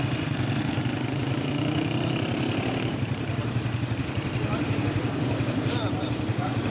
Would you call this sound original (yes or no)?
no